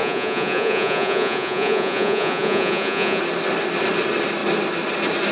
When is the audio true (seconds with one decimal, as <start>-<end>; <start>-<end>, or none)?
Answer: 3.2-5.3